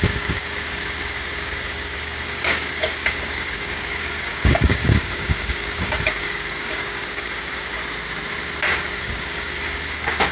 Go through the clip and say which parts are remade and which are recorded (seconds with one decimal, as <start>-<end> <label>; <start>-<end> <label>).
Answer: 0.0-7.8 remade; 7.8-8.7 recorded; 8.7-10.3 remade